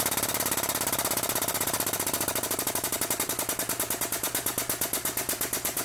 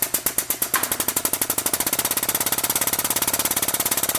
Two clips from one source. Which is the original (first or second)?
second